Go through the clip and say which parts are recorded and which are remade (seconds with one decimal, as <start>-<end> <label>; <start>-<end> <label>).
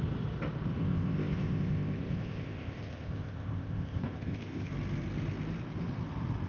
0.0-0.8 recorded; 0.8-4.7 remade; 4.7-6.5 recorded